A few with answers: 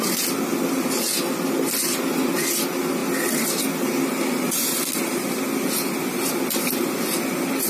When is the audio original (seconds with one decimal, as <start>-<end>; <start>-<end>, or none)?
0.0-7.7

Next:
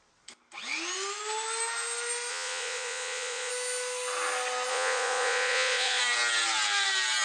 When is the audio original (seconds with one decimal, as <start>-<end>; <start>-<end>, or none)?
0.0-2.3; 3.5-4.7; 6.0-7.2

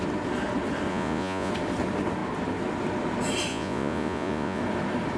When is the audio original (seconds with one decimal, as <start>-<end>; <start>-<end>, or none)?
0.0-0.9; 1.5-3.5; 4.6-5.2